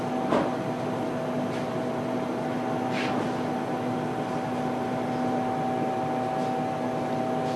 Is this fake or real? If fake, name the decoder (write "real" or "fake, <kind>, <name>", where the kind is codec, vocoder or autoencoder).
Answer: real